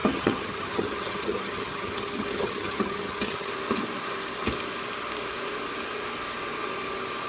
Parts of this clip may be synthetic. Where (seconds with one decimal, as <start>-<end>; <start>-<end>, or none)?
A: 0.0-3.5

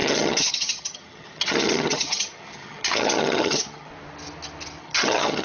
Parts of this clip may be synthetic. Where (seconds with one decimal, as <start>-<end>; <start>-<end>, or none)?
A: 0.0-3.9; 4.8-5.4

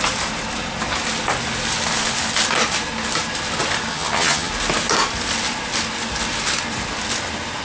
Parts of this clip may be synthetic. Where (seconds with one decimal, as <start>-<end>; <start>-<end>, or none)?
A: 3.9-4.5

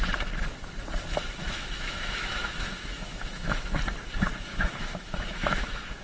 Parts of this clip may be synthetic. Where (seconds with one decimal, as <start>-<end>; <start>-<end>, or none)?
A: 1.4-3.8; 4.5-6.0

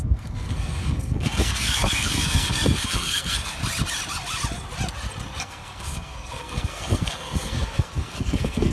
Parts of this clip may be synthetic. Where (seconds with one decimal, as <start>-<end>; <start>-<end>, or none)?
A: 0.0-3.6; 5.4-8.7